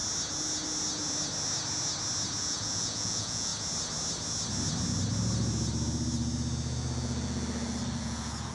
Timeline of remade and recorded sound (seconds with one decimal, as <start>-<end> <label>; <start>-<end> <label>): 0.0-2.4 recorded; 2.4-3.5 remade; 3.5-8.0 recorded; 8.0-8.5 remade